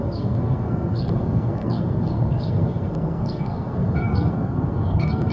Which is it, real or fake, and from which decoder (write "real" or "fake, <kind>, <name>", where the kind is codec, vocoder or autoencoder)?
fake, codec, SNAC